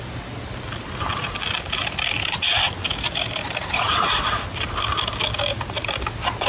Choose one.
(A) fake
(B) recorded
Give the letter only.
B